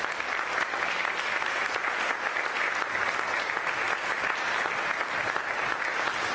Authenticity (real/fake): real